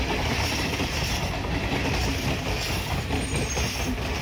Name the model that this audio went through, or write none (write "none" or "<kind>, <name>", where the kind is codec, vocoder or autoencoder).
none